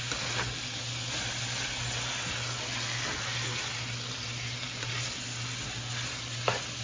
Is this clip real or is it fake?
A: real